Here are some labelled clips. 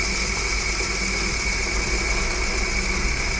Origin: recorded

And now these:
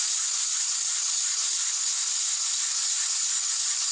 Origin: recorded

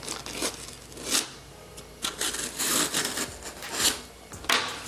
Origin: recorded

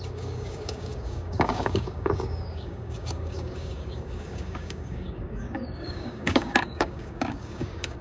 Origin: remade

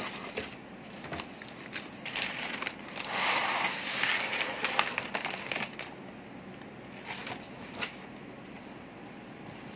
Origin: recorded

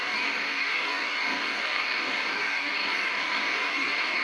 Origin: remade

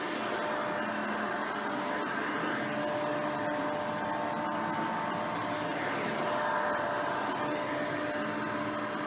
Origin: recorded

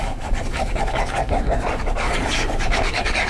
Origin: remade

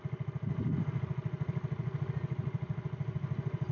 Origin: recorded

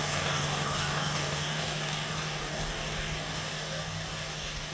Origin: remade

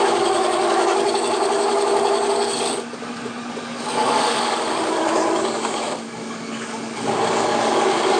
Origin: remade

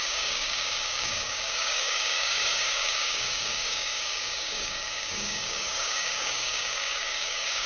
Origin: remade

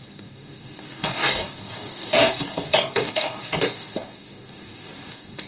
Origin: remade